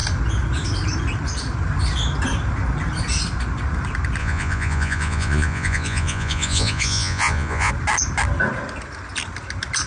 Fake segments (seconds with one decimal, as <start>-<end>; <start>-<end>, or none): 4.2-7.7